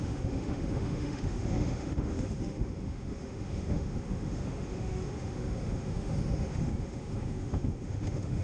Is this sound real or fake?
fake